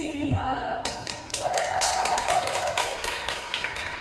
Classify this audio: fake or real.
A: fake